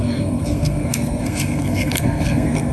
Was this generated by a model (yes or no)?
yes